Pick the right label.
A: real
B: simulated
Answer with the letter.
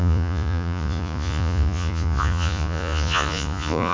B